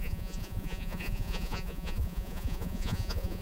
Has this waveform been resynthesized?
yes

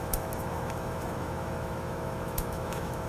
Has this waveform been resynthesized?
yes